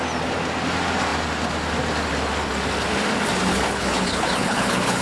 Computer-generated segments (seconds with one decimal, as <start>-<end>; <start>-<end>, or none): 3.5-5.0